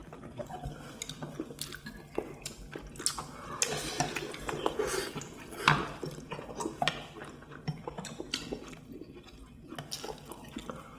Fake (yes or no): no